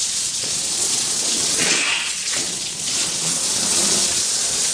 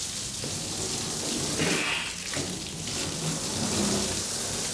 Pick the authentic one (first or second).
second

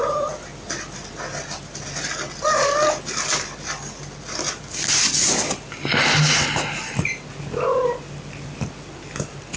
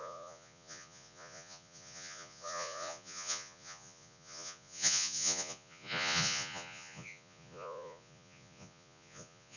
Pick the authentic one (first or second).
first